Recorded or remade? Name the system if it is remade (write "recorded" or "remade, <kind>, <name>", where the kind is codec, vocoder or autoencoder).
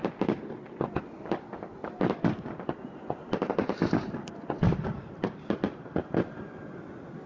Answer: recorded